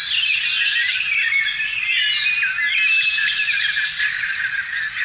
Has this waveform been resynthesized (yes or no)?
no